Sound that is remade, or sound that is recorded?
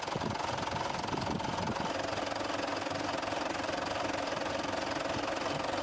recorded